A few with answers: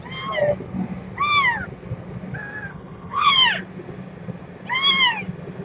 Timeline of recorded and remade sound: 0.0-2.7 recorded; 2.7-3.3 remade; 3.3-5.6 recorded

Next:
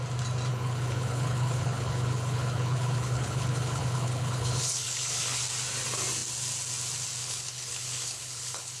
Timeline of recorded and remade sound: 0.0-0.5 recorded; 0.5-5.4 remade; 5.4-7.2 recorded; 7.2-8.8 remade

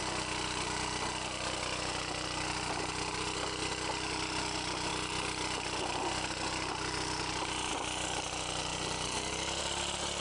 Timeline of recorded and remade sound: 0.0-10.2 recorded

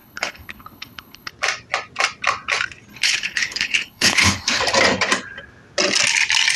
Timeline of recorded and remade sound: 0.0-1.3 remade; 1.3-2.9 recorded; 2.9-4.6 remade; 4.6-6.6 recorded

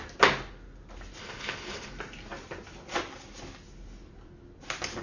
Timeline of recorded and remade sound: 0.0-1.2 recorded; 1.2-1.9 remade; 1.9-5.0 recorded

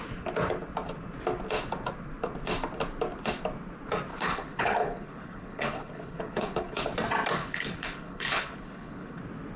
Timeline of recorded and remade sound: 0.0-4.1 recorded; 4.1-6.8 remade; 6.8-7.4 recorded; 7.4-9.2 remade; 9.2-9.6 recorded